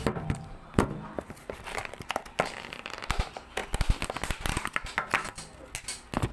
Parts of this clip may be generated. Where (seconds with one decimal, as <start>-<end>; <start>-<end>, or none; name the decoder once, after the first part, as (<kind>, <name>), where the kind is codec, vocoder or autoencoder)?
0.0-1.8 (vocoder, BigVGAN v2); 2.5-3.6